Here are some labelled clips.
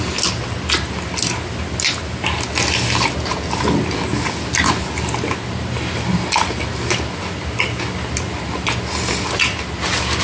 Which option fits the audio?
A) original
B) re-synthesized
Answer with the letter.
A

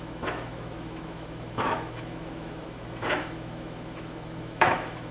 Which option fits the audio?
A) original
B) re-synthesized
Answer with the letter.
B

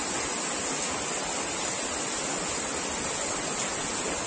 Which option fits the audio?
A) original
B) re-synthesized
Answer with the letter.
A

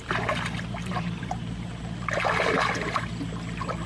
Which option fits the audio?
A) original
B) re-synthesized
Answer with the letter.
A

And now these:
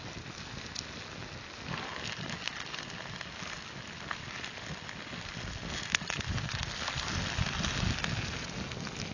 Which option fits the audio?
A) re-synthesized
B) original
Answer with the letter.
B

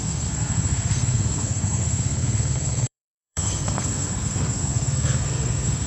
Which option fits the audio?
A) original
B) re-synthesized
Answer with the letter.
B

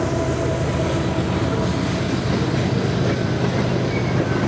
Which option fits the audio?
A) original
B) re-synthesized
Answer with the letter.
A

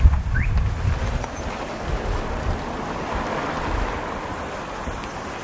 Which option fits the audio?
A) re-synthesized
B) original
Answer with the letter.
B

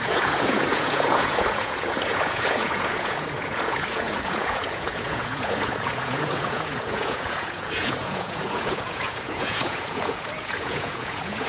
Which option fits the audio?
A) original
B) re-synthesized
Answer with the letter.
B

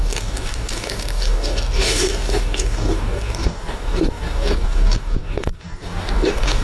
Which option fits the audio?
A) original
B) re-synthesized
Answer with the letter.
B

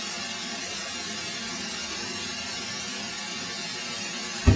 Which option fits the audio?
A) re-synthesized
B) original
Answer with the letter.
B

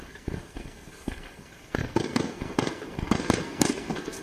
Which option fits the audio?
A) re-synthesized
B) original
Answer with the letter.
A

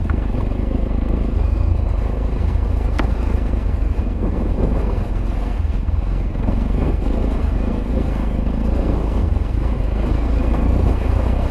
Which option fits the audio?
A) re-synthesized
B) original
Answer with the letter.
A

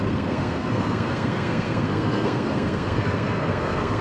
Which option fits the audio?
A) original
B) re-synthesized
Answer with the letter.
B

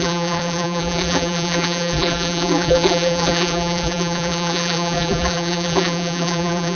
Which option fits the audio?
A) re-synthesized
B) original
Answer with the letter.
A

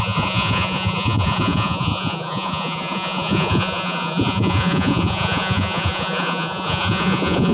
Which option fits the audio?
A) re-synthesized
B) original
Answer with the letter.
A